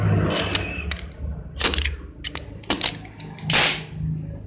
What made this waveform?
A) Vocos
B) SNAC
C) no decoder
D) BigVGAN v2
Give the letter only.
C